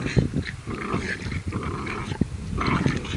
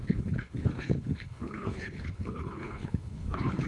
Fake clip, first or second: second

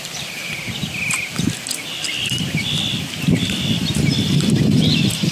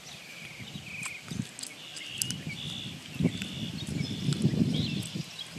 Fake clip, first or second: first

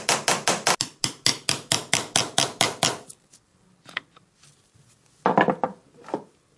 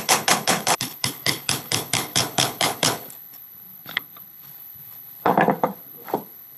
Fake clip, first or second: second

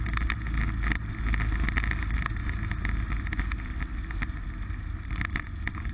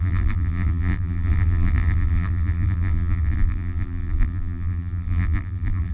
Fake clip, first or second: second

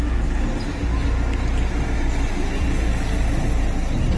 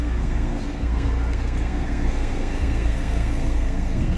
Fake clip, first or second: second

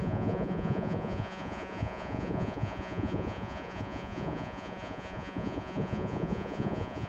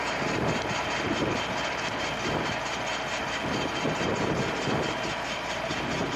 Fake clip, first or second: first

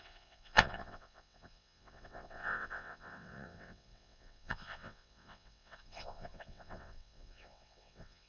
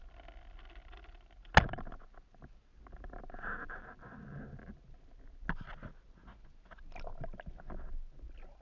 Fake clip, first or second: first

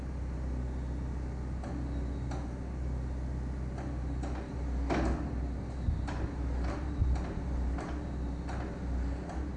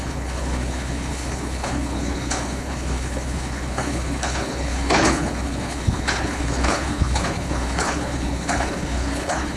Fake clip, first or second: second